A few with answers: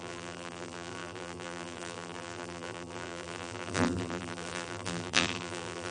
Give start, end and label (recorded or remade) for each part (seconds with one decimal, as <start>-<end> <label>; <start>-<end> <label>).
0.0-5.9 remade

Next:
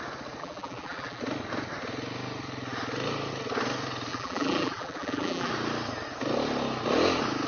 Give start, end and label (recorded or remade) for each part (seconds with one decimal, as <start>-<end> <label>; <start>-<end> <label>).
0.0-0.4 recorded; 0.4-1.2 remade; 1.2-4.1 recorded; 4.1-5.5 remade; 5.5-7.5 recorded

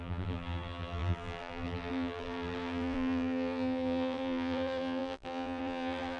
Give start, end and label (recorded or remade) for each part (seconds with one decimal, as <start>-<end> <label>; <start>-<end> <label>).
0.0-6.2 remade

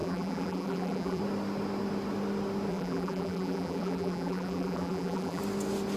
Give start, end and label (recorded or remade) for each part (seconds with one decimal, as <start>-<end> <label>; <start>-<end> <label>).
0.0-1.2 remade; 1.2-2.7 recorded; 2.7-5.4 remade; 5.4-6.0 recorded

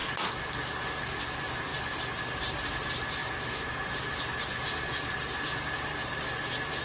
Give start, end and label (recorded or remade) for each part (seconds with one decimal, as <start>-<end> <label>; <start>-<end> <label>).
0.0-1.2 recorded; 1.2-1.7 remade; 1.7-2.2 recorded; 2.2-3.2 remade; 3.2-5.1 recorded; 5.1-6.8 remade

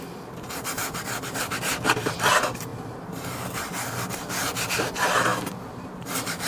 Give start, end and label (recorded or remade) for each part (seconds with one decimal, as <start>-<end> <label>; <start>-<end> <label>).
0.0-2.7 recorded; 2.7-3.7 remade; 3.7-5.3 recorded; 5.3-6.1 remade; 6.1-6.5 recorded

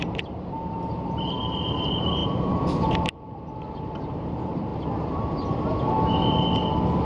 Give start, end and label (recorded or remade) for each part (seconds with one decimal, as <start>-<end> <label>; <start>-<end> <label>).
0.0-4.7 remade; 4.7-7.0 recorded

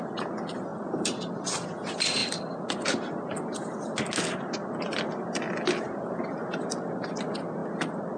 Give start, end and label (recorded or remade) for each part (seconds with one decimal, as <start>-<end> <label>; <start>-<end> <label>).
0.0-0.7 recorded; 0.7-1.5 remade; 1.5-8.2 recorded